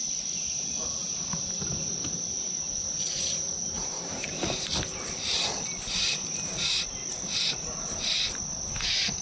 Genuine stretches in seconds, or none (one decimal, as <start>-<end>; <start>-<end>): 0.0-1.0; 4.7-9.2